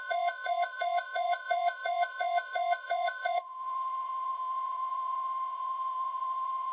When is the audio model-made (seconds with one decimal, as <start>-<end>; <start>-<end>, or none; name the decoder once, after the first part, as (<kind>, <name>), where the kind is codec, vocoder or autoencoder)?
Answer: 0.0-6.7 (vocoder, Vocos)